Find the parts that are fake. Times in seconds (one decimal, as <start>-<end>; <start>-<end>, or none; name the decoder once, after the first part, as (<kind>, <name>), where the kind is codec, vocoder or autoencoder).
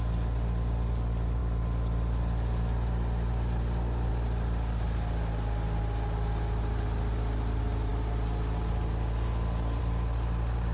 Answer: none